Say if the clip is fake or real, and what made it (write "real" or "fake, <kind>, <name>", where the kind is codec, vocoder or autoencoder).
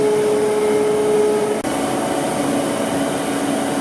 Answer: real